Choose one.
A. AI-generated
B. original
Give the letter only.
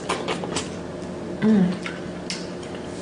B